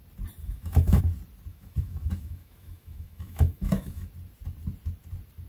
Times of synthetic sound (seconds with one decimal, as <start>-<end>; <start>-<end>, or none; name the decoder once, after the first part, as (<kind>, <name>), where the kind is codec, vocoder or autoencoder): 0.4-1.0 (autoencoder, DAC-VAE); 1.5-4.1